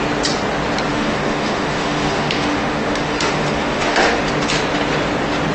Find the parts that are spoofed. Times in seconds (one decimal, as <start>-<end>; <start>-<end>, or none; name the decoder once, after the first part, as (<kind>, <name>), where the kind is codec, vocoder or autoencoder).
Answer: 0.9-4.2 (autoencoder, DAC-VAE)